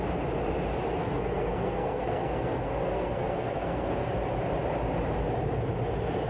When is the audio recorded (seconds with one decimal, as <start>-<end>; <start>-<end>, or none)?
0.0-1.0; 4.1-6.3